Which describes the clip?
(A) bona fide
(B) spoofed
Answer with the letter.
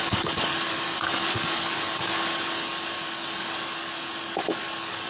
B